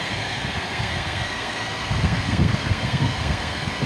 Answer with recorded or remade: remade